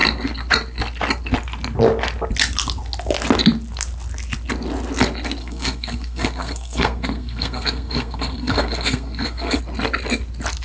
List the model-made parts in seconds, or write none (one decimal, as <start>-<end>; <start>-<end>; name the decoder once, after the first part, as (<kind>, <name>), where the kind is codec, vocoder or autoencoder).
5.4-9.6 (codec, SNAC)